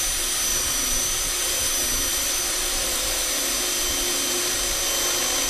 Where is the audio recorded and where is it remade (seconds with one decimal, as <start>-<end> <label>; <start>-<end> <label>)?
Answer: 0.0-0.5 recorded; 0.5-1.7 remade; 1.7-2.1 recorded; 2.1-3.2 remade; 3.2-5.5 recorded